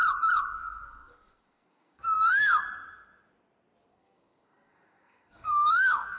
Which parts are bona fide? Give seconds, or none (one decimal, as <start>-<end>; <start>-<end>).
0.0-0.6; 2.6-3.9